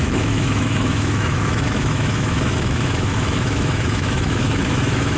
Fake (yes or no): yes